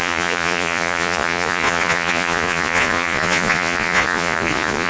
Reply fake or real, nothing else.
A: fake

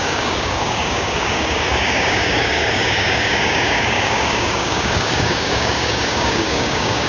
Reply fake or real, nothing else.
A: fake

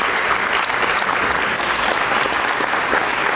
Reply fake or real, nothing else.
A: real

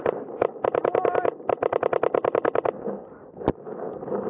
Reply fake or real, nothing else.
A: real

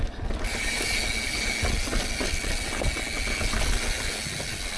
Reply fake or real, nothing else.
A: real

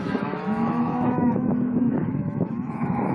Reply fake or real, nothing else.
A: fake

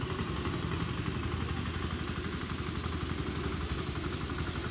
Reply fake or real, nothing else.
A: real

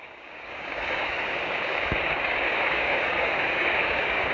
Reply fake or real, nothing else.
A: fake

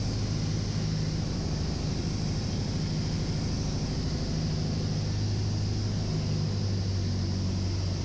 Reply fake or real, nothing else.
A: real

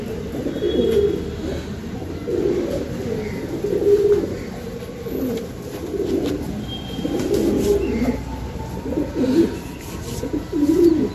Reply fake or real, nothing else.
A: real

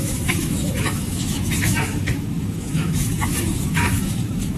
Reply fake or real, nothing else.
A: fake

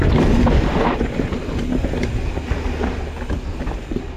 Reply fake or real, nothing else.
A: real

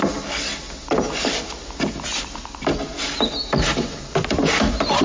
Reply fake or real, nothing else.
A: real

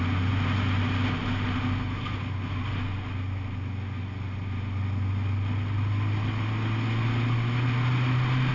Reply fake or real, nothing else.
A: real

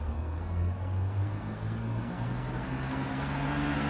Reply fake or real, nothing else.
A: fake